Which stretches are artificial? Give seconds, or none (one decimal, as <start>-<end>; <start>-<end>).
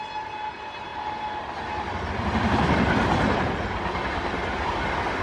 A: none